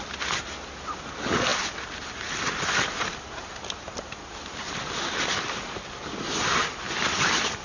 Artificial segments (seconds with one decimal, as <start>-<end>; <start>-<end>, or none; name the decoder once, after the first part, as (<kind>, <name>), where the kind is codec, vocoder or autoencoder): none